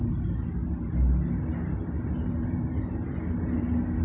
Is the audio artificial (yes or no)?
no